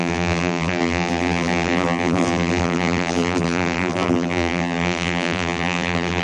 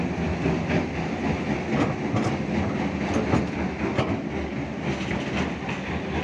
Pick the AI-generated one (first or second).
first